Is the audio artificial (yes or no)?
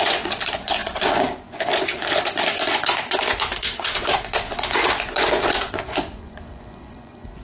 yes